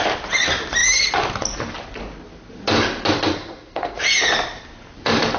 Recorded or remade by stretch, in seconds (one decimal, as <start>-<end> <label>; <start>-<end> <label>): 0.0-3.3 recorded; 3.3-4.0 remade; 4.0-5.4 recorded